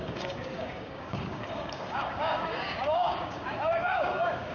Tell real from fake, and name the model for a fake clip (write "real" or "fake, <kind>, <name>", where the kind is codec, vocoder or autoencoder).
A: fake, codec, DAC